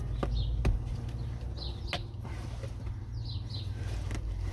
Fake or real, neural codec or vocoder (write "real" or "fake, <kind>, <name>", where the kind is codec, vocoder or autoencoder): real